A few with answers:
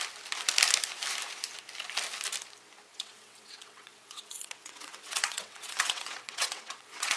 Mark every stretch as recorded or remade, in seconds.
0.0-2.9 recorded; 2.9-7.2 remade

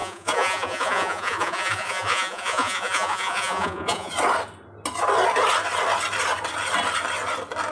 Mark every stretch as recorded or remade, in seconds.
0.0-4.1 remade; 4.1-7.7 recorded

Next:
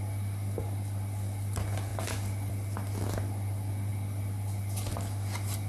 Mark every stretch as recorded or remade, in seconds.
0.0-5.7 recorded